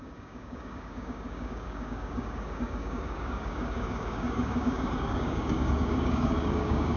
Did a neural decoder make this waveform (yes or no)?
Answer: yes